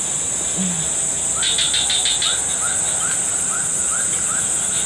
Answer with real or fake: real